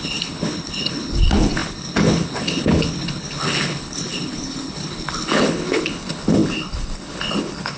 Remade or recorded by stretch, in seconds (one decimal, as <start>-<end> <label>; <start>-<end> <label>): 0.0-7.8 remade